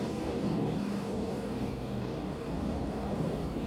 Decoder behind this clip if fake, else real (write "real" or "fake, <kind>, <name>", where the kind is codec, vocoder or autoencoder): fake, codec, DAC